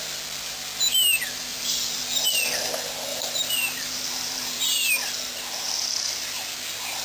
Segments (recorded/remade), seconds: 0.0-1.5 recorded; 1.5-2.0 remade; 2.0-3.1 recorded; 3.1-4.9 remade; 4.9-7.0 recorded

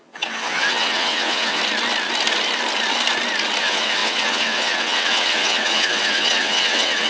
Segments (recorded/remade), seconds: 0.0-1.6 remade; 1.6-3.6 recorded; 3.6-7.1 remade

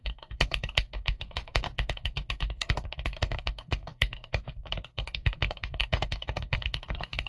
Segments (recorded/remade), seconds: 0.0-7.3 remade

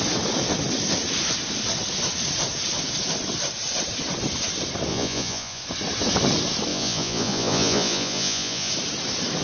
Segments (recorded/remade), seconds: 0.0-4.9 recorded; 4.9-5.6 remade; 5.6-6.7 recorded; 6.7-8.7 remade; 8.7-9.4 recorded

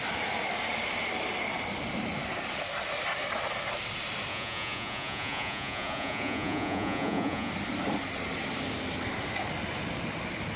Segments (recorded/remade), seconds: 0.0-4.3 recorded; 4.3-7.5 remade; 7.5-10.6 recorded

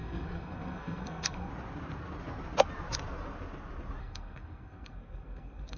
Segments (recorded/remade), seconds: 0.0-1.5 remade; 1.5-4.0 recorded; 4.0-5.8 remade